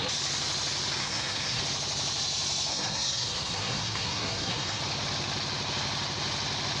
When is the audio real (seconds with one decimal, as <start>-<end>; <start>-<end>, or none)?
0.0-1.0; 1.6-2.7; 4.8-6.8